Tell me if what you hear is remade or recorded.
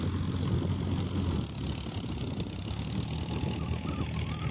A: recorded